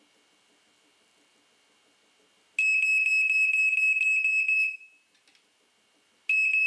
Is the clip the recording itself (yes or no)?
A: yes